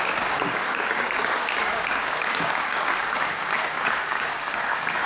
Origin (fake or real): fake